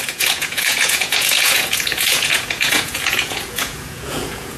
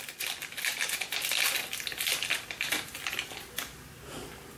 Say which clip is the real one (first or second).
second